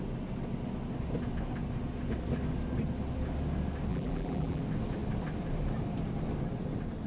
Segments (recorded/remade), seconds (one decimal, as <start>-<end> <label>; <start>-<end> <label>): 0.0-3.9 recorded; 3.9-4.6 remade; 4.6-7.1 recorded